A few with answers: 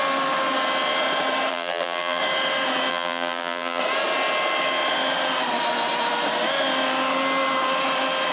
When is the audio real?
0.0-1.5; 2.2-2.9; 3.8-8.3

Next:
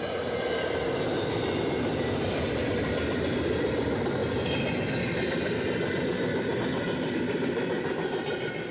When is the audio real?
0.0-8.7

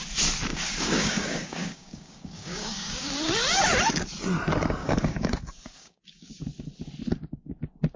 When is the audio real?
0.0-0.5; 3.1-4.8; 6.4-8.0

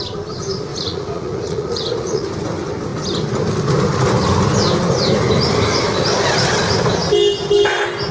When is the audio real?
0.0-0.7; 2.3-8.1

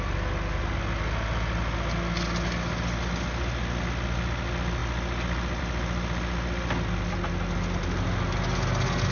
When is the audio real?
0.0-9.1

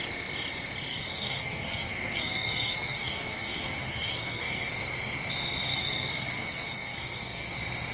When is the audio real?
0.0-0.9; 4.7-5.7; 7.5-7.9

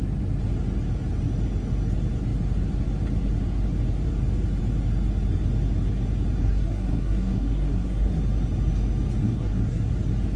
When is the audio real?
0.0-6.4; 8.2-9.2; 9.9-10.4

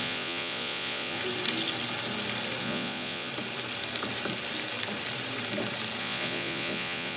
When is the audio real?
1.2-2.6; 3.3-6.0